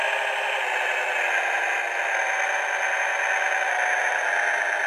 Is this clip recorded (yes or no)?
yes